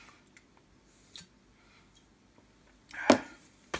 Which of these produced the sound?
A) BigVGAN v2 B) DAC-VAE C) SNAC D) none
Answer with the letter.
D